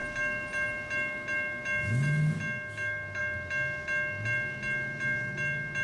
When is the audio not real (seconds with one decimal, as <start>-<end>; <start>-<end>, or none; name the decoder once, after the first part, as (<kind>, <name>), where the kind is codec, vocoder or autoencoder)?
none